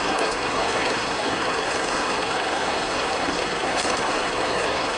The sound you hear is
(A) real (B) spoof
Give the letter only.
B